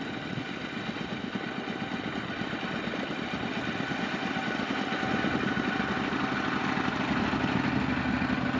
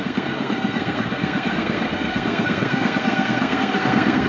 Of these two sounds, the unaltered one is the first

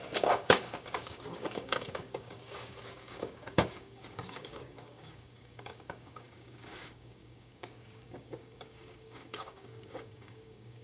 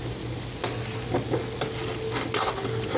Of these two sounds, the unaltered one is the second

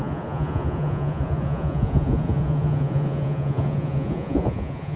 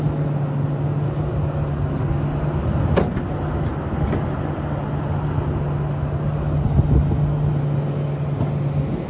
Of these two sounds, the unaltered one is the second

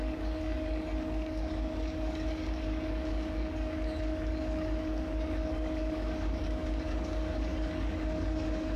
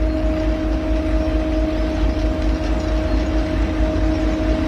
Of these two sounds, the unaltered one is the second